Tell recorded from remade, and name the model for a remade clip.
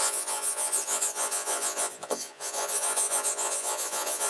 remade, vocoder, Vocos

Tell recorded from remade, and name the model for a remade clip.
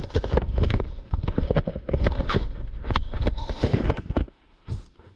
remade, autoencoder, DAC-VAE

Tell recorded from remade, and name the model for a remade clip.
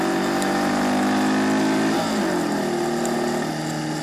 recorded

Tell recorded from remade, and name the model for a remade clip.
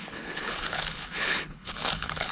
remade, codec, HILCodec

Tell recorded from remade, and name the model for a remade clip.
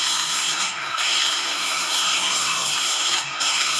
remade, codec, SNAC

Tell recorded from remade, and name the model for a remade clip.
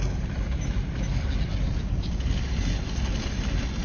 recorded